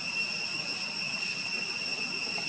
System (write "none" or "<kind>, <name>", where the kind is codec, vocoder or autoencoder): none